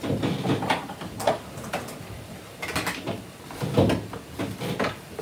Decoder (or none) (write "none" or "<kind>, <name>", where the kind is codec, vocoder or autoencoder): none